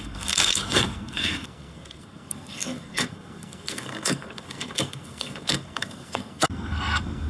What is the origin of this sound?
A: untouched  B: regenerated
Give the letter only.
B